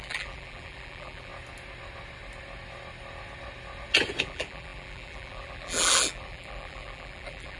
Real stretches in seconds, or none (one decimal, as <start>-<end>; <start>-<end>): 1.3-4.2